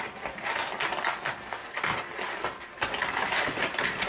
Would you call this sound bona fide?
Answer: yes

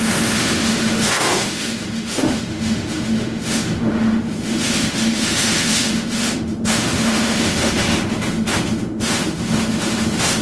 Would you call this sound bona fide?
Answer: no